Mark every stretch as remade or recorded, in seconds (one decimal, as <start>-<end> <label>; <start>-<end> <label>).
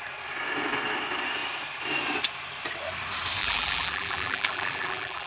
0.0-3.4 recorded; 3.4-5.3 remade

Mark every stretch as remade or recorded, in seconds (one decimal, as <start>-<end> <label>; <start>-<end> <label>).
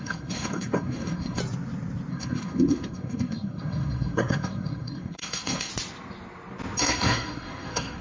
0.0-1.4 remade; 1.4-2.1 recorded; 2.1-5.7 remade; 5.7-6.8 recorded; 6.8-8.0 remade